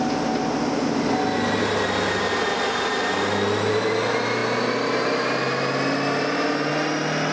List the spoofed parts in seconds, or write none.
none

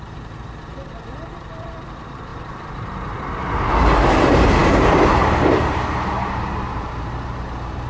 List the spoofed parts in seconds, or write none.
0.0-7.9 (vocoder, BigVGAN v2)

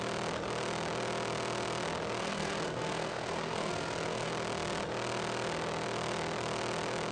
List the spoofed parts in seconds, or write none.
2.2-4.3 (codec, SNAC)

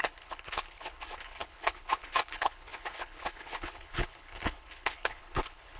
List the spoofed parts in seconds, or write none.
0.0-5.8 (codec, HILCodec)